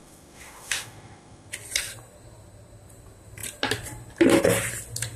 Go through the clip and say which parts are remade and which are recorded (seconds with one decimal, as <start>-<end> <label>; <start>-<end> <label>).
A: 0.0-1.5 remade; 1.5-5.2 recorded